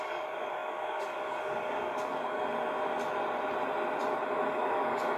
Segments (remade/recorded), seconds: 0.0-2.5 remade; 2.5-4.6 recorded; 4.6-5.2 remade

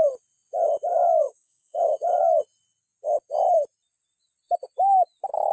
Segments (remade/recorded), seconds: 0.0-0.9 recorded; 0.9-2.4 remade; 2.4-5.5 recorded

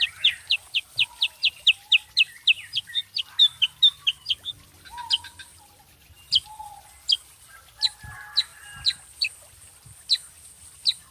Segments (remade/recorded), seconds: 0.0-11.1 recorded